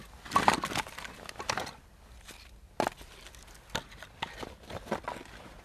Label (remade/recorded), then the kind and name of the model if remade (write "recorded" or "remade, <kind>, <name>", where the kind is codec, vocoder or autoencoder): recorded